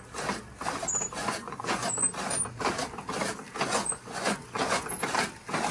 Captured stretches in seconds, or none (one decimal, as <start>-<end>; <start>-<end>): 0.0-1.2; 1.9-3.7; 5.0-5.7